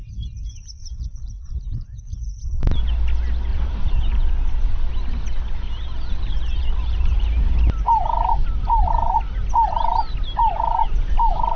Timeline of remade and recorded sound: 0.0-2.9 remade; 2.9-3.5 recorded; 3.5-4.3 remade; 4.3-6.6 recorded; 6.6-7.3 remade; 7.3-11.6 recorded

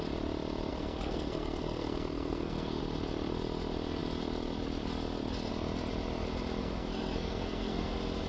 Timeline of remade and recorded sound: 0.0-0.7 recorded; 0.7-2.8 remade; 2.8-6.6 recorded; 6.6-7.9 remade; 7.9-8.3 recorded

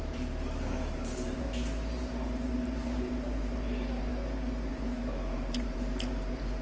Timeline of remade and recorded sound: 0.0-4.1 remade; 4.1-4.7 recorded; 4.7-6.6 remade